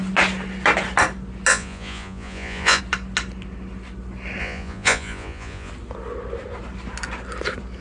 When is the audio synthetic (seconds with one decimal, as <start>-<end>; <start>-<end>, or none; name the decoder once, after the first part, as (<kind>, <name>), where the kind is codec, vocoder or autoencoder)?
1.5-2.8 (vocoder, Vocos); 4.4-5.7